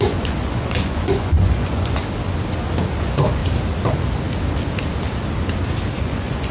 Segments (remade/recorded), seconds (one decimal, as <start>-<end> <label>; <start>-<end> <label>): 0.0-2.0 remade; 2.0-2.9 recorded; 2.9-3.4 remade; 3.4-6.0 recorded; 6.0-6.5 remade